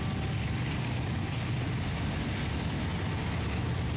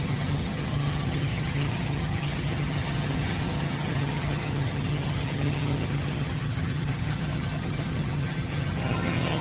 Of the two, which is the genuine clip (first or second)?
first